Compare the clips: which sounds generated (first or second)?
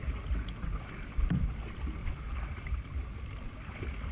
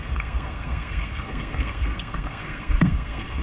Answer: second